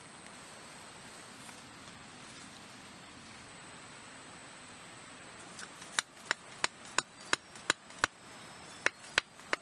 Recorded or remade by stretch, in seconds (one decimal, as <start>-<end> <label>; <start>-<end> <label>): 0.0-9.6 recorded